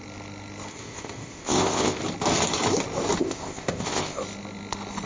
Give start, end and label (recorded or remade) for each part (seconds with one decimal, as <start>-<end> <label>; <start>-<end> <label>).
0.0-0.7 recorded; 0.7-2.0 remade; 2.0-3.2 recorded; 3.2-4.2 remade; 4.2-5.1 recorded